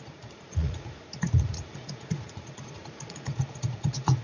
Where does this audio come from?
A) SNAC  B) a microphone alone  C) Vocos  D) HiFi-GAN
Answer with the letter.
C